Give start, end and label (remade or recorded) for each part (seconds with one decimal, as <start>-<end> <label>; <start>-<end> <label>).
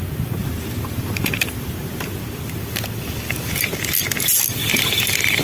0.0-0.4 recorded; 0.4-2.2 remade; 2.2-5.4 recorded